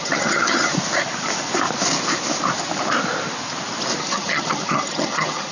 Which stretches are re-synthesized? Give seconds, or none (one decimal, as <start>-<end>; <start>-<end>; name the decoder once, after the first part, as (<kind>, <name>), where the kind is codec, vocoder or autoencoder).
0.0-0.7 (vocoder, HiFi-GAN); 4.0-5.5